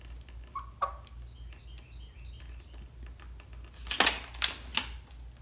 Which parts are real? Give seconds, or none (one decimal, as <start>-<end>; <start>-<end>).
0.0-5.4